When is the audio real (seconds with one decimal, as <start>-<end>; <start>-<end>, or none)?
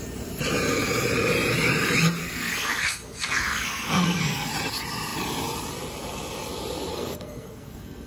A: 0.0-2.2; 4.5-6.9